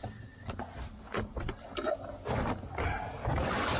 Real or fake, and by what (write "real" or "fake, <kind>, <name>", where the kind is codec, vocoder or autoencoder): real